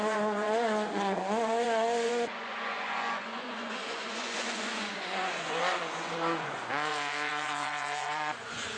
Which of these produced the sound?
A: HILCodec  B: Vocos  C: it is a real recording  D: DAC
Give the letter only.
B